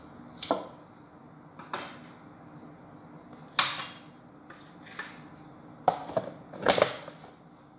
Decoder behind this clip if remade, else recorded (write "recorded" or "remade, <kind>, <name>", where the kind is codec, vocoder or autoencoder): recorded